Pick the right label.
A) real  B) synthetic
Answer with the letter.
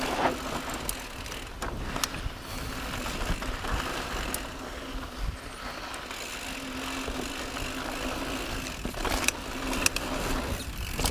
A